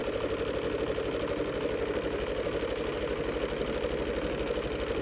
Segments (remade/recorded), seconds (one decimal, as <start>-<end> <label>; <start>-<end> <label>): 0.0-5.0 recorded